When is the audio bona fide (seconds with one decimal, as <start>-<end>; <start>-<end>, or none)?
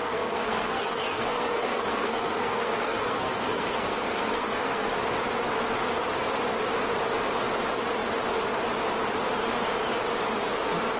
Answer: 4.9-11.0